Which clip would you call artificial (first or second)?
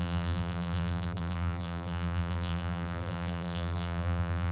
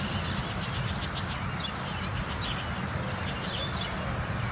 first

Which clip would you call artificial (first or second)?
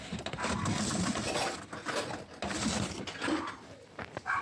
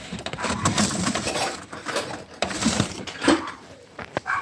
second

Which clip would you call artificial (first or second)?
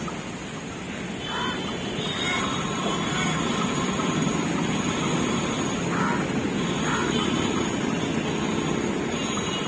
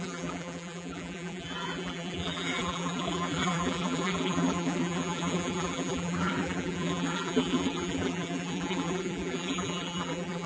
second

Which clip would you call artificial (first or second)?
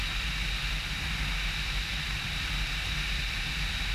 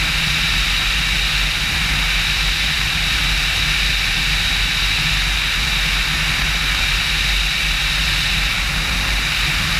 first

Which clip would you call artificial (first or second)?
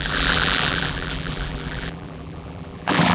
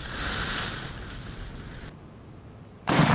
first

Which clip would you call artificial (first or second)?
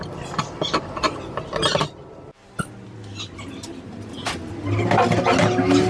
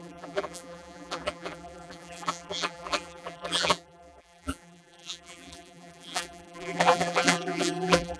second